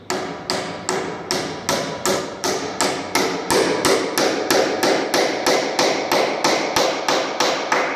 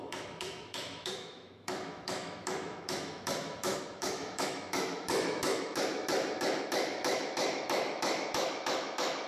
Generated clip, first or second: second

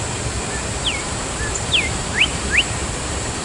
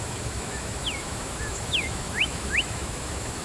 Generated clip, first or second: second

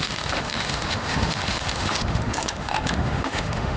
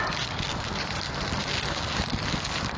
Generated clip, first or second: first